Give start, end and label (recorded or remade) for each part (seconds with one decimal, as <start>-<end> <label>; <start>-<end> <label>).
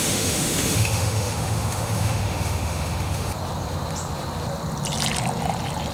0.0-3.3 remade; 3.3-5.9 recorded